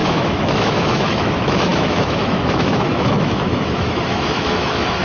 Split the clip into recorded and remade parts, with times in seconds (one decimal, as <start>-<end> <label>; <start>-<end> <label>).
0.0-5.0 remade